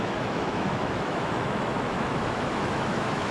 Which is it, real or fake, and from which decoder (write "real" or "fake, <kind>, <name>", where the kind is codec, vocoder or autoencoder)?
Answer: fake, autoencoder, DAC-VAE